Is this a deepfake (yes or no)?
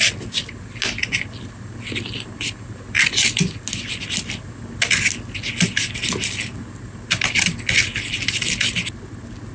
no